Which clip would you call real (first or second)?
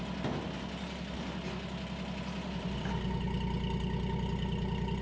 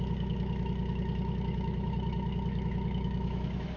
first